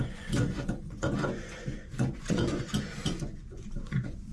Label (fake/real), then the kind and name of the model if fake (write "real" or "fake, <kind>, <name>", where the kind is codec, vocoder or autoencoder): fake, vocoder, Vocos